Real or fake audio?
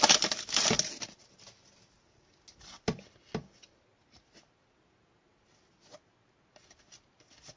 real